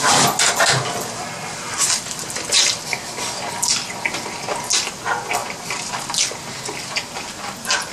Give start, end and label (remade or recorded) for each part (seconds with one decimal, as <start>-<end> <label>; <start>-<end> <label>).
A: 0.0-7.9 recorded